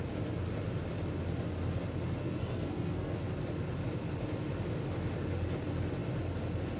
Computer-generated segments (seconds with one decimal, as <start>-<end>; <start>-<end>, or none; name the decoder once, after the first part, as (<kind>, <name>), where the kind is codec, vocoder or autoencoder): 2.2-3.1 (codec, SNAC)